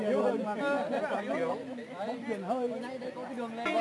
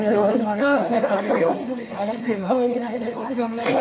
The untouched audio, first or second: first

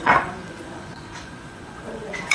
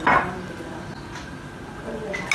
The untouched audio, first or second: second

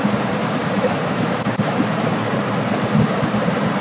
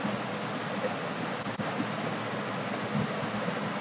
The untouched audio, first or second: second